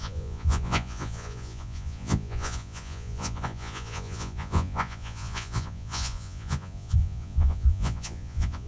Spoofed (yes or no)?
yes